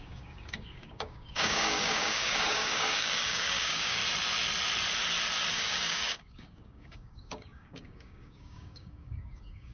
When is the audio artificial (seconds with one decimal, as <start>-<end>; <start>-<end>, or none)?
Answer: 0.0-4.0; 5.5-9.7